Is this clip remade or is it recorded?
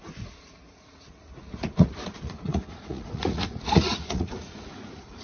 remade